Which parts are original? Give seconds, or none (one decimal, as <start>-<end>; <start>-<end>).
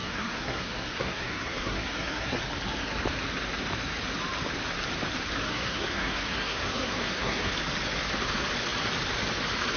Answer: 2.4-5.5; 7.5-9.8